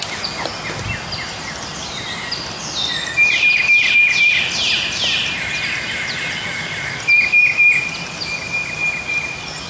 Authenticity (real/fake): real